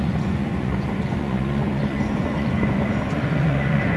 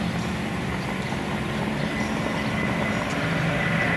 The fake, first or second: first